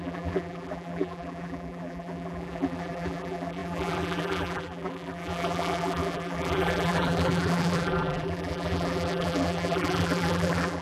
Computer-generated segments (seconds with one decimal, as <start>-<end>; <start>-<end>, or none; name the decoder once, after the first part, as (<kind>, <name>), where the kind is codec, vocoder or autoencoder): 0.0-10.8 (vocoder, BigVGAN v2)